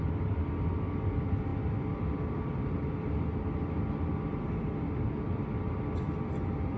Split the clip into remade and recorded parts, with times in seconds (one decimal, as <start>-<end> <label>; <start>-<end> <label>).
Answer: 0.0-6.8 recorded